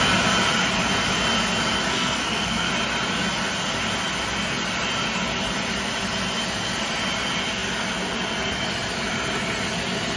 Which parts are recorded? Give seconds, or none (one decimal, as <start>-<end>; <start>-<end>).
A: 0.0-1.9; 2.7-10.2